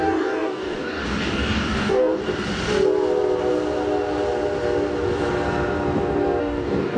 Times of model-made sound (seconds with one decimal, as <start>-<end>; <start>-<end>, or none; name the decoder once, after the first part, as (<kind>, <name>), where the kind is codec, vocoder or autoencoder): 0.0-2.2 (codec, DAC); 6.4-7.0